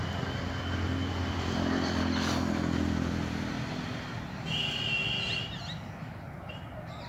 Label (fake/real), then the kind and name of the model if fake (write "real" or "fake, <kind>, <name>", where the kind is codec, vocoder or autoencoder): real